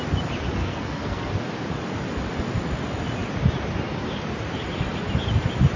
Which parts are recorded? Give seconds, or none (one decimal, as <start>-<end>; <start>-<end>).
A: 0.0-0.6; 1.3-5.8